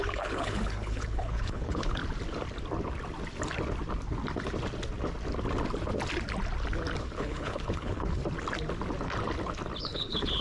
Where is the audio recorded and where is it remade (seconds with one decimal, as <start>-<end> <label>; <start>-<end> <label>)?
0.0-2.0 remade; 2.0-7.0 recorded; 7.0-8.2 remade; 8.2-9.8 recorded; 9.8-10.4 remade